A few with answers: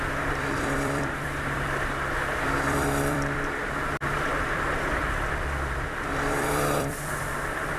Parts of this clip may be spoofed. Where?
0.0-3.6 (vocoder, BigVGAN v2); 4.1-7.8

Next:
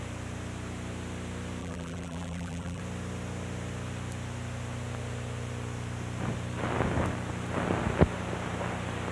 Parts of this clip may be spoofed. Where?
1.6-2.8 (vocoder, BigVGAN v2)

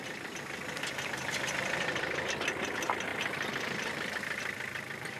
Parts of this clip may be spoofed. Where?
3.1-5.2 (vocoder, BigVGAN v2)

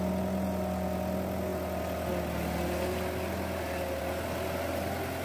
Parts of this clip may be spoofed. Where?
none

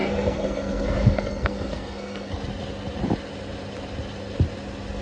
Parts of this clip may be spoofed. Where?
0.0-2.3 (codec, SNAC)